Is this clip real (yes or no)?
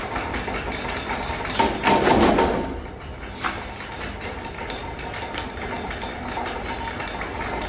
yes